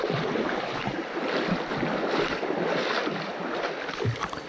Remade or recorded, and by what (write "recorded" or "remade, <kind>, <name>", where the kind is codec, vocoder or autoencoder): remade, vocoder, BigVGAN v2